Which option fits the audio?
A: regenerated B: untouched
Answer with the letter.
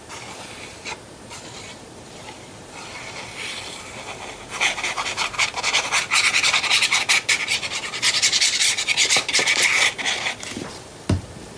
A